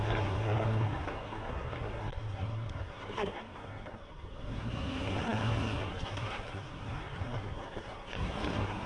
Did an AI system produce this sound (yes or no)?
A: yes